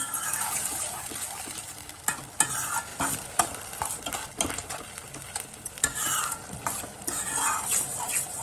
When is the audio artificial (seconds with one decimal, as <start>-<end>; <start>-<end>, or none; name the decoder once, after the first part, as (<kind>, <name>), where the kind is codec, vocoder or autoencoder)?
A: 1.4-8.4 (vocoder, BigVGAN v2)